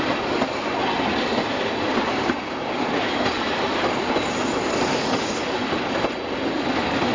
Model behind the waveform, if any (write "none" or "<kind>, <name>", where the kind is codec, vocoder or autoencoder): none